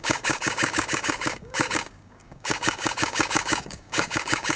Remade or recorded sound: remade